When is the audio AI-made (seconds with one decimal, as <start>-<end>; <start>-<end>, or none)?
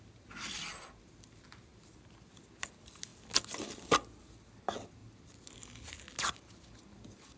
none